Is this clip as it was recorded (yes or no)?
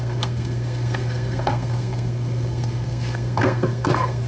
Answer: no